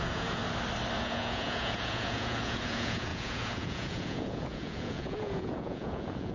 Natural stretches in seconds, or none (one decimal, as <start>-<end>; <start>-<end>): 0.4-1.0